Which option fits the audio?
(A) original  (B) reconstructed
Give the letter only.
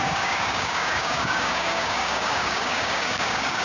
B